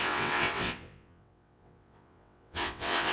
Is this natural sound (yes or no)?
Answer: no